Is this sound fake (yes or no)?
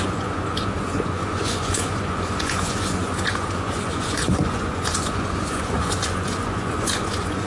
yes